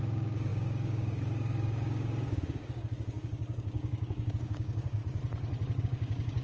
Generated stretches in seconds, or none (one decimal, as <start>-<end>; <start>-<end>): 0.0-5.0; 5.8-6.4